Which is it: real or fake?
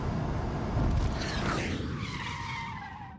real